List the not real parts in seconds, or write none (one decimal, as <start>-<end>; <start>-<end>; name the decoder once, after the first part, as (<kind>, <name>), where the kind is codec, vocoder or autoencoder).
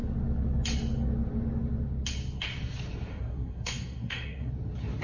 3.1-4.5 (codec, SNAC)